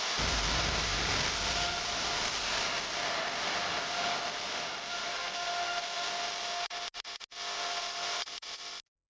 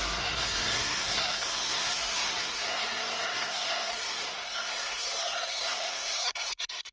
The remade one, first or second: second